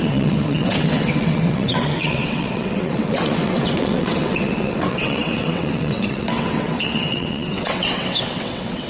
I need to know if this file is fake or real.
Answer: fake